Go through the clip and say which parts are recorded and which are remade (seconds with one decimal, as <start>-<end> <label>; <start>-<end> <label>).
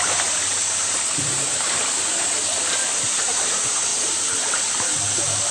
0.0-2.5 remade; 2.5-3.2 recorded; 3.2-5.5 remade